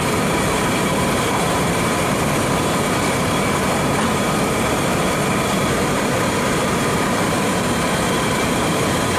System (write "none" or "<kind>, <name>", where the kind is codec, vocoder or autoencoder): vocoder, BigVGAN v2